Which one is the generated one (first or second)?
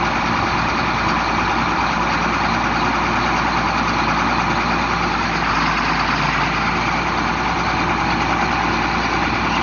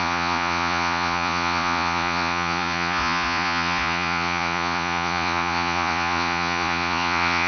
second